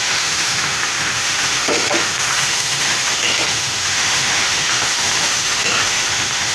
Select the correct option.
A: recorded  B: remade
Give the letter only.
B